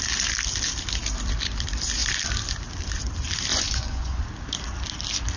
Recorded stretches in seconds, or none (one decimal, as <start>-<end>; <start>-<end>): 0.0-3.5; 4.2-5.4